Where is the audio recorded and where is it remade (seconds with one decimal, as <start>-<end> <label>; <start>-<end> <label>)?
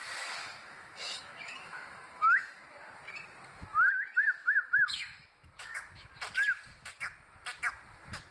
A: 0.0-0.4 recorded; 0.4-2.6 remade; 2.6-4.4 recorded; 4.4-6.1 remade; 6.1-8.3 recorded